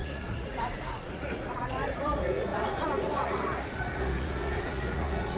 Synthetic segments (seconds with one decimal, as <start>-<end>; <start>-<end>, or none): 0.0-5.4

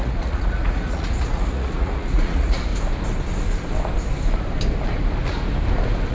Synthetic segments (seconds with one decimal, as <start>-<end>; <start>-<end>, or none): 0.0-2.7

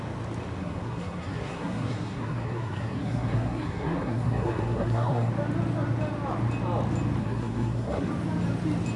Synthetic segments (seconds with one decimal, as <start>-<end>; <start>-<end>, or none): 0.6-5.3; 7.2-8.1

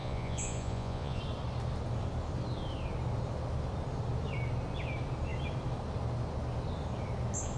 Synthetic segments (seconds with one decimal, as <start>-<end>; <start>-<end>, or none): 0.0-1.2

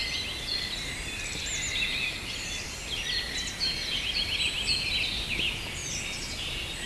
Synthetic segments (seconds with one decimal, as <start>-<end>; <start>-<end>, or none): none